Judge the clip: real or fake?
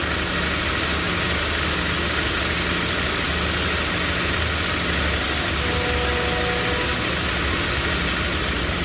real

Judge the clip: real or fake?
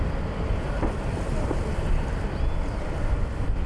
real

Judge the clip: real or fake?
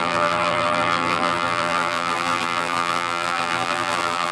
fake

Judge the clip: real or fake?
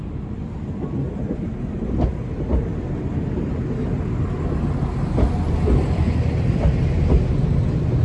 real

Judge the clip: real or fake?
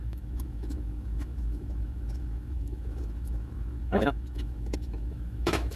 fake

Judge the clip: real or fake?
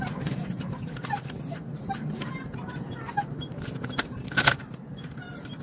fake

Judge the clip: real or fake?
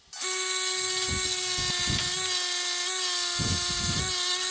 real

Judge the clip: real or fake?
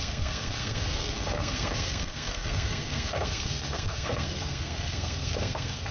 fake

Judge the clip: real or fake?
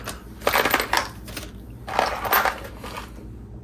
real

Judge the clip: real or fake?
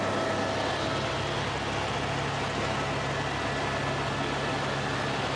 real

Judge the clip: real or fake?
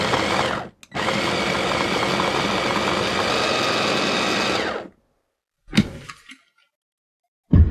real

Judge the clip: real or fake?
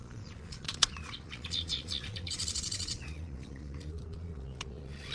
fake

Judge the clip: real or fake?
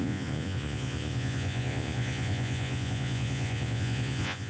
fake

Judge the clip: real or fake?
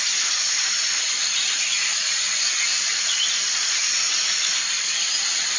real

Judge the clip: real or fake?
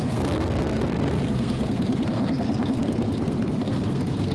fake